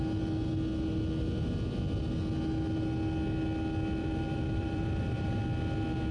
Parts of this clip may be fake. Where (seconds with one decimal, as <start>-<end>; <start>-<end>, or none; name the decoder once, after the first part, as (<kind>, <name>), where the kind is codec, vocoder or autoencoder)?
4.0-5.4 (vocoder, BigVGAN v2)